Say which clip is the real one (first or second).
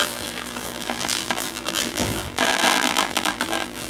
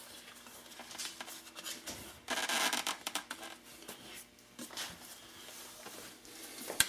second